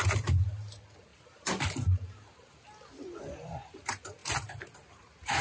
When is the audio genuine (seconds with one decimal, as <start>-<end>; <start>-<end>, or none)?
0.0-5.4